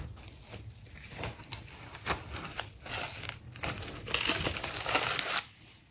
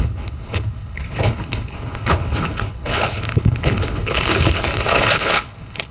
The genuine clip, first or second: first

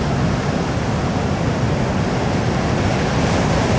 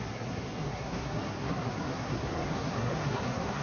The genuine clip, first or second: first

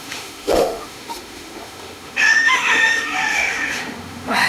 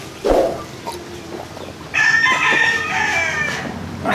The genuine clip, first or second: second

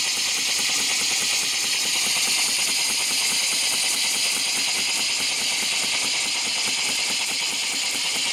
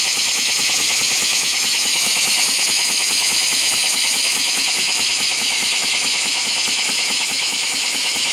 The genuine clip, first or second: first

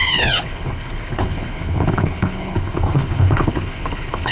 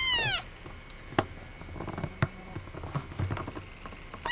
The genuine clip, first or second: second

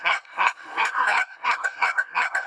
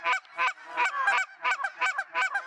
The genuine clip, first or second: second